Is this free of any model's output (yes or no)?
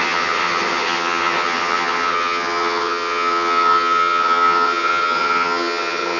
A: no